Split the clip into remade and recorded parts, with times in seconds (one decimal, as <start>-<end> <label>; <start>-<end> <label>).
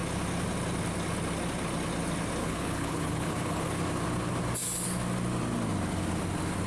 0.0-2.4 recorded; 2.4-3.8 remade; 3.8-6.7 recorded